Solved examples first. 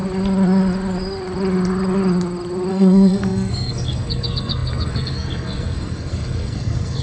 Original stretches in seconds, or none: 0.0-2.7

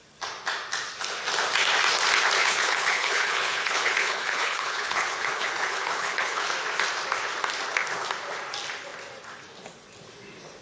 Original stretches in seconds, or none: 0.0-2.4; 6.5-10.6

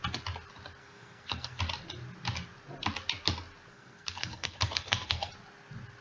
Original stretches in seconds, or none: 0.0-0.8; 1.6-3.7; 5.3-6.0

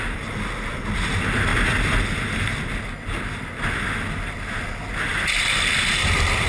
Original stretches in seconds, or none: 0.0-6.5

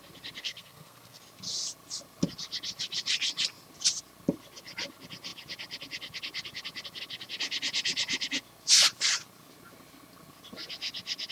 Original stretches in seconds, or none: 0.0-0.4; 1.2-11.3

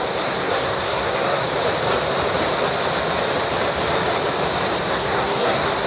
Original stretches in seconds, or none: 1.4-4.9

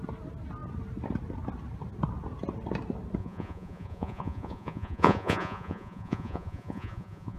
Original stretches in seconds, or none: 0.0-3.2